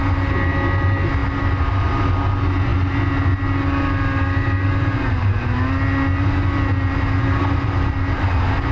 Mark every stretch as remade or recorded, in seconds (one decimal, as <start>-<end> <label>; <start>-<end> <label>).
0.0-8.7 recorded